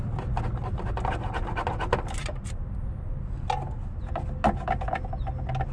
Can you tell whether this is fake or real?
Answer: real